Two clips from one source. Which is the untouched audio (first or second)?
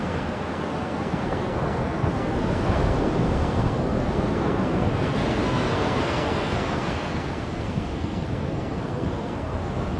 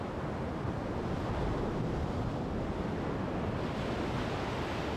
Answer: second